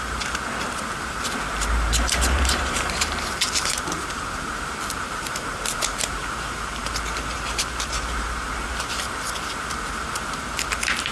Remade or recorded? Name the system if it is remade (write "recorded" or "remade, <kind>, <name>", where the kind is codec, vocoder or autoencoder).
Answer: remade, vocoder, BigVGAN v2